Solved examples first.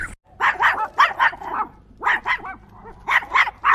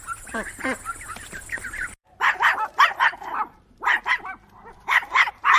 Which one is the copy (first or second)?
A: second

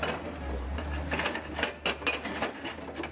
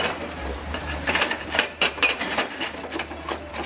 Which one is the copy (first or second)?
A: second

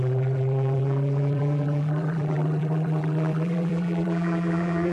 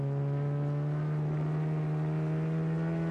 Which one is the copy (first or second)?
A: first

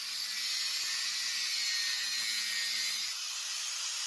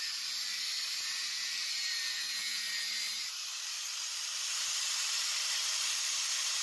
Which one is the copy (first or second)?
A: second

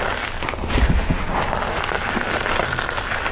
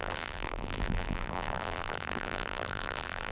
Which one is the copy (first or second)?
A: second